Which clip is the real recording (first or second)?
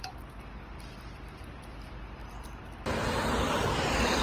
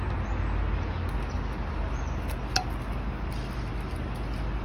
second